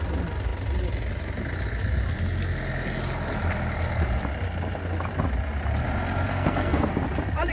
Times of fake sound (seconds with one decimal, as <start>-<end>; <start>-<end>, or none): 6.3-6.9